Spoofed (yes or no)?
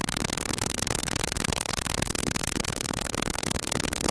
yes